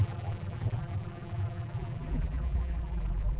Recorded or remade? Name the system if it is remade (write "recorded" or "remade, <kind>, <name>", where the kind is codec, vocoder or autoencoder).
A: remade, vocoder, BigVGAN v2